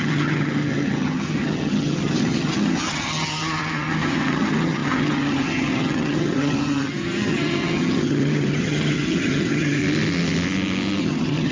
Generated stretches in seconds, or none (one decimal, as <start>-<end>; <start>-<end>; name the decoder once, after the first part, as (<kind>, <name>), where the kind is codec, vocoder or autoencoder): 0.0-9.8 (vocoder, HiFi-GAN); 11.0-11.5